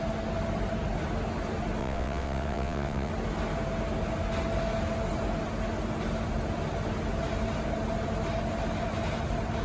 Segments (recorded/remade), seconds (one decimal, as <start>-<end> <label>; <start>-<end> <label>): 0.0-1.8 recorded; 1.8-3.1 remade; 3.1-9.6 recorded